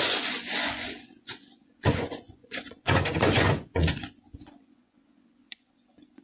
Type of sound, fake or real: fake